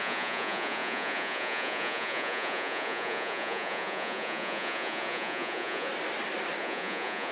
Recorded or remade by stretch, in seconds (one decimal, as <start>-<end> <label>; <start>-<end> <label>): 0.0-5.9 remade; 5.9-6.6 recorded; 6.6-7.3 remade